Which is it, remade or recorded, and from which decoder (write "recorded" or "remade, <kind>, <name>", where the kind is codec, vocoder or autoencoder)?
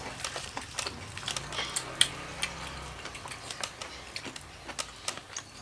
recorded